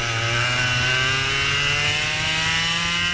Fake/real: real